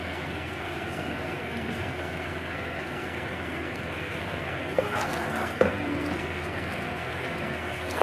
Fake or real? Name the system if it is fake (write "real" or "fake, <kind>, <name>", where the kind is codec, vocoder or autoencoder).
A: fake, codec, SNAC